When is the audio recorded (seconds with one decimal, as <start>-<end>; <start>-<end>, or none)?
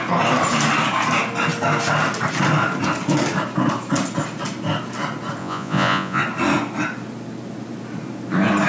0.0-5.4; 6.2-8.7